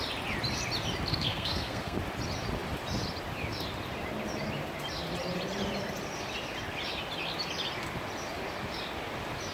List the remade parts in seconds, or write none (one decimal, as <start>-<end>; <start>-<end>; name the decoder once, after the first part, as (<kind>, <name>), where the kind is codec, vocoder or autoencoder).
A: 1.1-2.0 (codec, SNAC)